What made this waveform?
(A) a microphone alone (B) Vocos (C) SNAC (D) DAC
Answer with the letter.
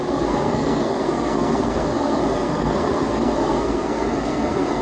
C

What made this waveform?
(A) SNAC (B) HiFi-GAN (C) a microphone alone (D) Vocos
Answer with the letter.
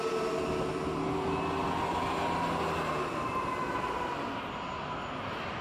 C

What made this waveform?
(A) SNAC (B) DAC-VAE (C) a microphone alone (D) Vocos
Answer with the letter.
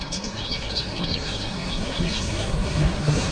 A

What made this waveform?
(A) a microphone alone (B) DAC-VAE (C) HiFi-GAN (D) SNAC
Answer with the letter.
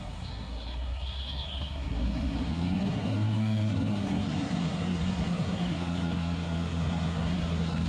D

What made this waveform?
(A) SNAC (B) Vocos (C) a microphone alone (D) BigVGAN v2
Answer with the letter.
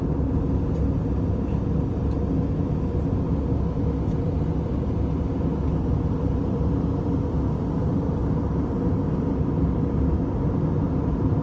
C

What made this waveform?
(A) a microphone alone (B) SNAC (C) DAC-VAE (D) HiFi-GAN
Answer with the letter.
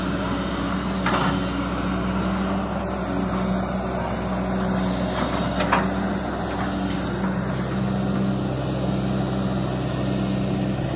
A